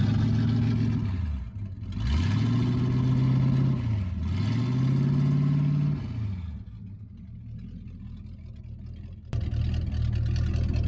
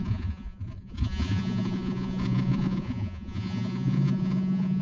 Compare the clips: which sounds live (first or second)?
first